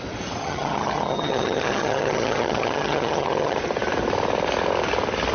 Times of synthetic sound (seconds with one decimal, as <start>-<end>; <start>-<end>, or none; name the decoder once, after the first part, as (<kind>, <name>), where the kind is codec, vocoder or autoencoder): 0.4-3.6 (vocoder, HiFi-GAN)